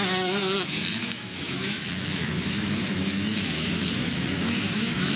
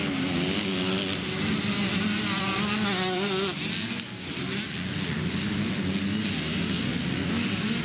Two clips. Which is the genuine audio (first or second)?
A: second